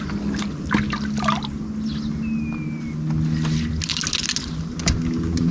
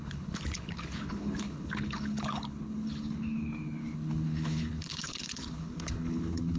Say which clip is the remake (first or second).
second